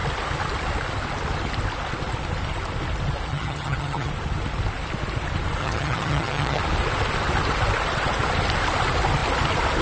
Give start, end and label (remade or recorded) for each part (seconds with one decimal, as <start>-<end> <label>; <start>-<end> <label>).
0.0-3.3 recorded; 3.3-4.1 remade; 4.1-5.6 recorded; 5.6-6.6 remade; 6.6-9.8 recorded